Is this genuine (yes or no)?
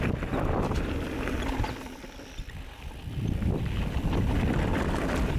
yes